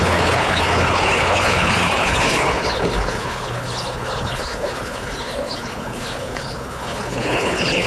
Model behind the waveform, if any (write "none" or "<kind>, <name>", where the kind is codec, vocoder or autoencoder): codec, HILCodec